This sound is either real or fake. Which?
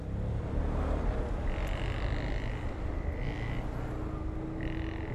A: real